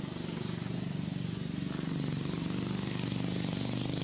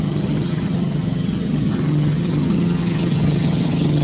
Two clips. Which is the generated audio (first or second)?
second